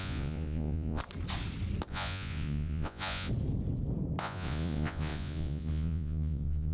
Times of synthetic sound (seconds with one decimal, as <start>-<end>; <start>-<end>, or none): 0.0-1.0; 1.9-3.3; 4.2-6.7